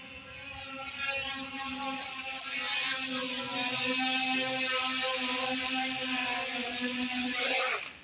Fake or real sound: real